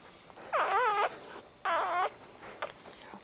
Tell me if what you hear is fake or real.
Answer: real